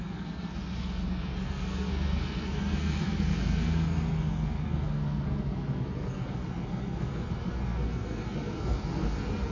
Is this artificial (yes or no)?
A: yes